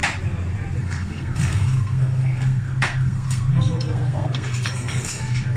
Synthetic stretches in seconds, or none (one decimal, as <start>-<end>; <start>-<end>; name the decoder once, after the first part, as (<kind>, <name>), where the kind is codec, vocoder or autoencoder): 0.8-5.6 (codec, SNAC)

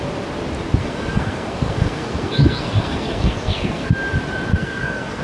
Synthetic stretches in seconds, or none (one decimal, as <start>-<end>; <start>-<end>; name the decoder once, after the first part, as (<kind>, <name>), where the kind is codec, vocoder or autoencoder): 0.8-3.9 (codec, SNAC); 4.5-5.2

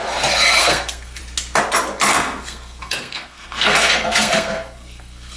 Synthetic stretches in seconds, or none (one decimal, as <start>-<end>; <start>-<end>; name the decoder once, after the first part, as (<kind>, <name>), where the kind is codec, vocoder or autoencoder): 0.6-1.2 (codec, SNAC); 2.1-5.4